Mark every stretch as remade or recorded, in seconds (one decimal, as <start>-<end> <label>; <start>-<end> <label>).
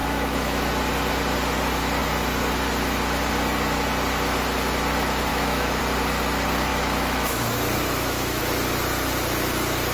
0.0-0.7 remade; 0.7-5.3 recorded; 5.3-5.8 remade; 5.8-6.7 recorded; 6.7-8.4 remade; 8.4-9.9 recorded